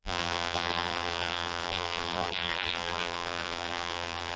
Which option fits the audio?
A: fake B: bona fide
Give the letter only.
A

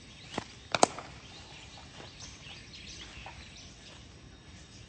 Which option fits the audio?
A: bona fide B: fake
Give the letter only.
A